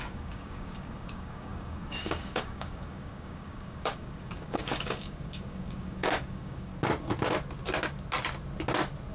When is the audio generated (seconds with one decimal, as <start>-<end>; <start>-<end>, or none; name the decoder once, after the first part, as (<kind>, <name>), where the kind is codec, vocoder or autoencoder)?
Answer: 0.0-6.7 (codec, DAC)